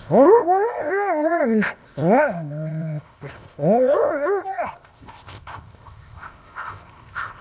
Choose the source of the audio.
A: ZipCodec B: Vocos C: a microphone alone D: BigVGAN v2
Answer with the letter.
A